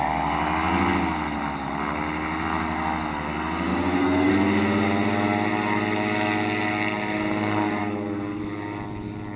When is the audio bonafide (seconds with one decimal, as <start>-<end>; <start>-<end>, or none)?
0.0-3.7; 4.3-7.8; 8.4-9.4